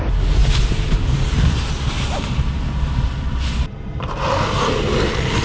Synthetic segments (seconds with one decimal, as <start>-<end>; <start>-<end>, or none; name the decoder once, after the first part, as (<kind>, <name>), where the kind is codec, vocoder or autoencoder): none